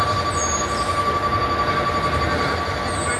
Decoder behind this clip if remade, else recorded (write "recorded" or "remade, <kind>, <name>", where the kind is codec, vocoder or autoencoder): recorded